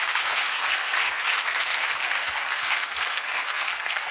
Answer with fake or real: fake